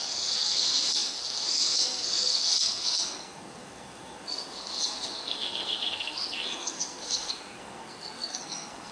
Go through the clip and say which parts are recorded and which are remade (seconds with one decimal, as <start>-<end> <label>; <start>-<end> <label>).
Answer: 0.0-8.9 remade